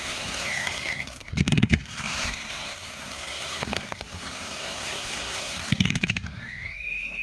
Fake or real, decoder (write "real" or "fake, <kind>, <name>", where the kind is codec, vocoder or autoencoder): fake, codec, SNAC